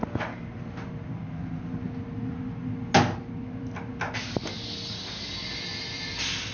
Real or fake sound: real